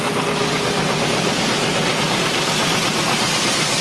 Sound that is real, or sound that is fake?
real